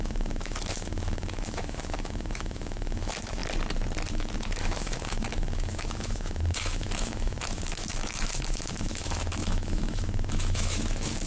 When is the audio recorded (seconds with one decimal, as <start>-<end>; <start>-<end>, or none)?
3.4-4.1

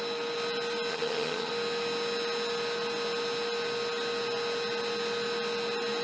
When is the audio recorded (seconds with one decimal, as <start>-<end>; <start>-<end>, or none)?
0.0-0.9; 1.5-6.0

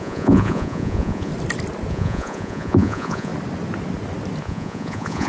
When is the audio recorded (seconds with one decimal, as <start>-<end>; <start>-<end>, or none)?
1.3-1.9; 3.3-4.4

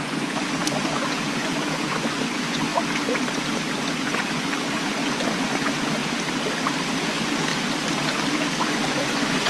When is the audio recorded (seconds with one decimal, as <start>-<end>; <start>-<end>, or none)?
2.7-3.8; 6.0-7.0; 7.5-8.6

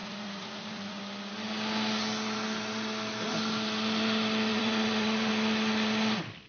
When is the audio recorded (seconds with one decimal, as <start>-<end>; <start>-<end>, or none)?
1.0-4.5; 5.3-6.5

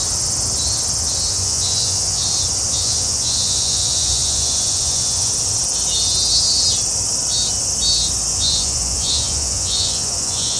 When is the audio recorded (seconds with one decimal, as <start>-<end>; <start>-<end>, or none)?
0.0-1.3; 2.2-2.7; 5.3-8.3